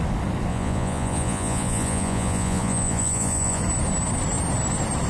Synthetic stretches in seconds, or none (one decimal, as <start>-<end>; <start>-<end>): 0.5-3.6